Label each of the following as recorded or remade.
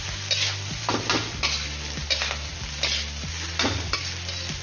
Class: recorded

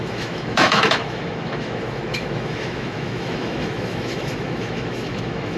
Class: remade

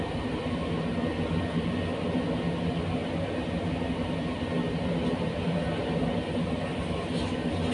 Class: recorded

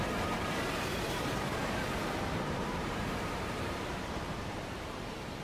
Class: remade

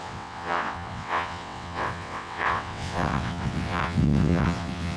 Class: remade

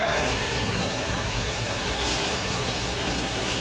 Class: remade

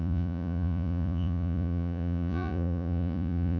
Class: remade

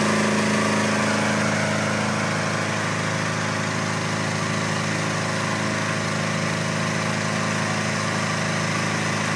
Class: recorded